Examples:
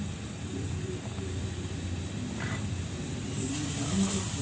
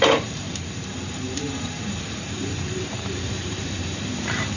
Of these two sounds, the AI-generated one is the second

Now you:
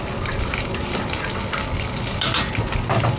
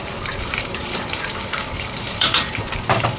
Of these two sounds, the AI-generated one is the second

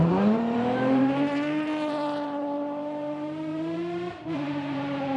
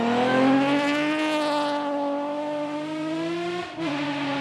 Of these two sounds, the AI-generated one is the first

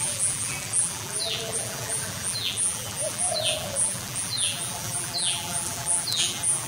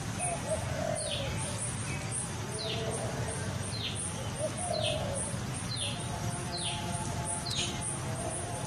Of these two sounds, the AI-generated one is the first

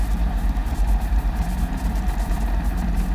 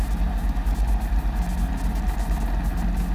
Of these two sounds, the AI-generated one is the first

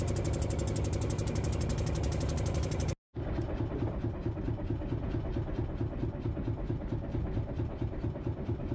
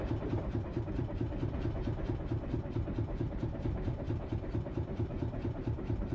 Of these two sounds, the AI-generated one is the second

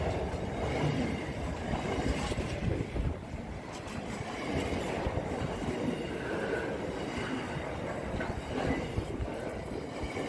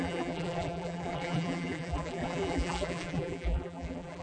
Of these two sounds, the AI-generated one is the second